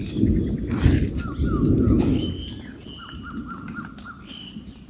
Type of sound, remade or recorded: recorded